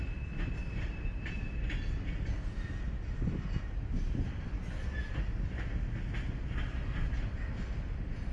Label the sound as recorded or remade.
recorded